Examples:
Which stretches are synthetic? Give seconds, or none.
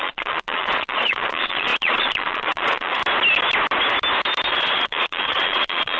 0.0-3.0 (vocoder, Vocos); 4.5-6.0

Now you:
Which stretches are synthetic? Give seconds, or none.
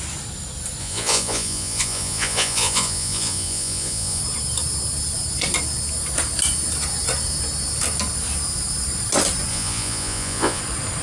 0.8-4.2 (vocoder, Vocos); 9.5-10.6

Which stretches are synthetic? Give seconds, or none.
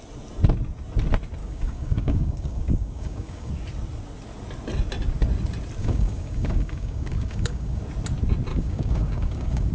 1.4-3.5 (codec, DAC); 5.8-7.8; 8.5-9.7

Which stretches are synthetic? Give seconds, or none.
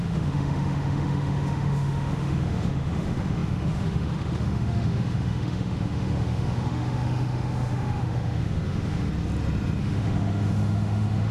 0.0-9.1 (autoencoder, DAC-VAE); 9.8-11.3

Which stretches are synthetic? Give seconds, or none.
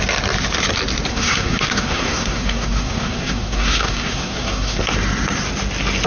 1.1-4.8 (codec, SNAC)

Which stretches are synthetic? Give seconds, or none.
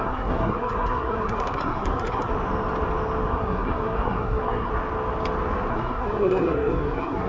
0.0-2.3 (codec, SNAC); 3.3-4.7; 5.7-7.3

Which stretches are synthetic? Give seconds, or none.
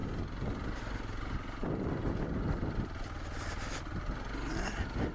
none